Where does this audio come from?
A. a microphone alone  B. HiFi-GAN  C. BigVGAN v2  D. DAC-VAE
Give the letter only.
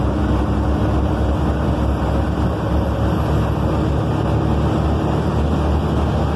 A